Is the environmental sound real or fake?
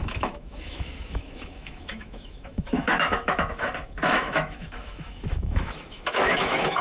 fake